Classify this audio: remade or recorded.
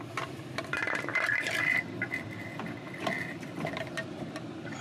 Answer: remade